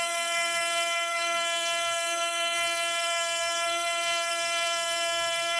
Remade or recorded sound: remade